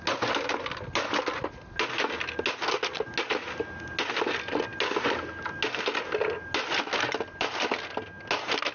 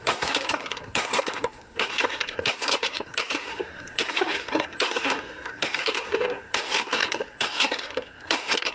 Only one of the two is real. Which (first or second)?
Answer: first